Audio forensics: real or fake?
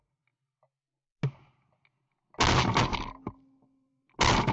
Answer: real